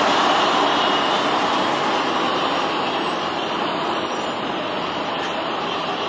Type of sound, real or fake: real